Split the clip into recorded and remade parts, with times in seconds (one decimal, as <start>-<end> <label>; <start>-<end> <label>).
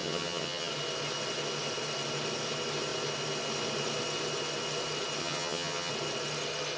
0.0-0.7 remade; 0.7-5.2 recorded; 5.2-5.9 remade; 5.9-6.8 recorded